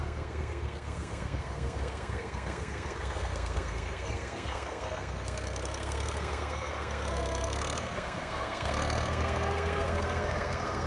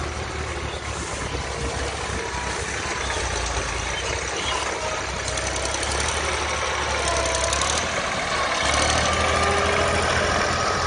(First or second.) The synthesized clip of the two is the first